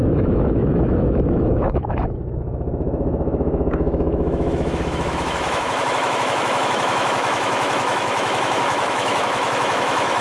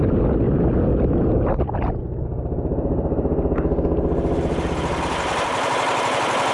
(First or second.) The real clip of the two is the second